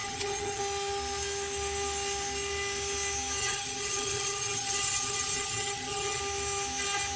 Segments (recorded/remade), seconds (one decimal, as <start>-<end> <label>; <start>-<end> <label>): 0.0-0.6 remade; 0.6-3.4 recorded; 3.4-6.2 remade; 6.2-7.2 recorded